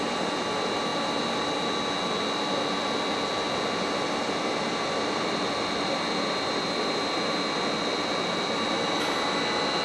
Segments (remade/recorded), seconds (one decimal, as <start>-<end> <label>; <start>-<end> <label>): 0.0-9.8 recorded